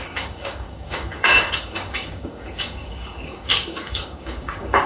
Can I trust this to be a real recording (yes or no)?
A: no